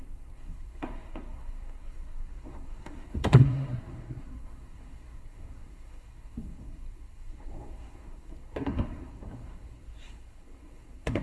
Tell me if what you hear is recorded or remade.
remade